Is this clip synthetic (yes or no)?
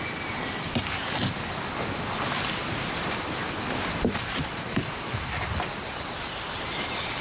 no